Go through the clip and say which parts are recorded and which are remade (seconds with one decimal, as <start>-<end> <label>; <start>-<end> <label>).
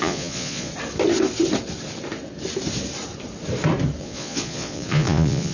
0.0-0.7 remade; 0.7-4.0 recorded; 4.0-5.5 remade